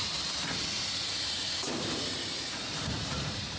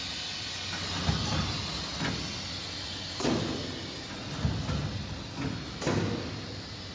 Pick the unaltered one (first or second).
second